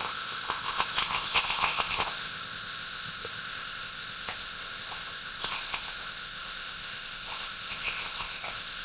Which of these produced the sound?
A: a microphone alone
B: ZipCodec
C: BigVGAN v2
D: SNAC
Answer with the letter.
B